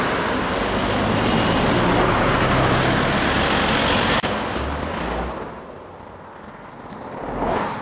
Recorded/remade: recorded